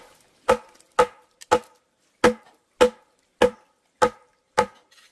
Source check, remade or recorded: recorded